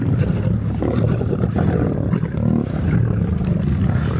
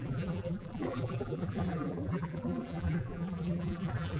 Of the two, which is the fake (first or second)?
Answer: second